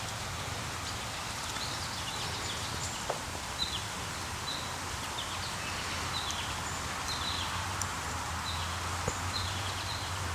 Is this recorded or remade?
recorded